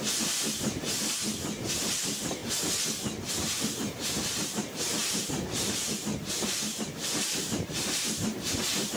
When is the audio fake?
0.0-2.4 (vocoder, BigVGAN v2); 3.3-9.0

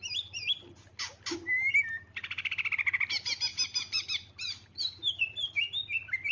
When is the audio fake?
3.5-5.2 (vocoder, BigVGAN v2)

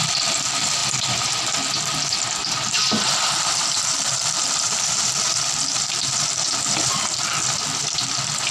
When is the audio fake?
0.0-0.8 (vocoder, BigVGAN v2); 3.4-8.5

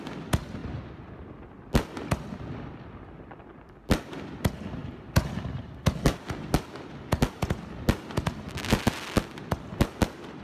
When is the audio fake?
none

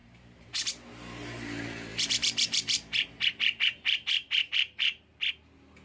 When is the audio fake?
0.0-0.7 (vocoder, BigVGAN v2); 1.9-5.2

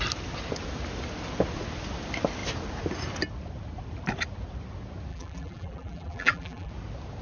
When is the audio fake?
5.1-6.7 (vocoder, BigVGAN v2)

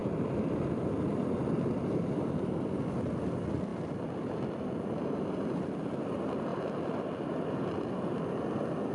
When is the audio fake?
0.0-2.8 (vocoder, BigVGAN v2); 6.5-8.0